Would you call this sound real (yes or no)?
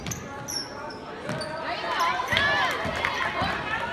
yes